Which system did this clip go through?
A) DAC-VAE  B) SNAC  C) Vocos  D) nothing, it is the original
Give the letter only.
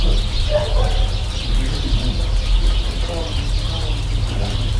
D